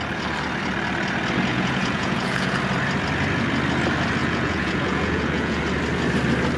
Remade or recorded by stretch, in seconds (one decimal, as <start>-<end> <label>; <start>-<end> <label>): 0.0-1.5 recorded; 1.5-2.6 remade; 2.6-4.2 recorded; 4.2-5.6 remade; 5.6-6.6 recorded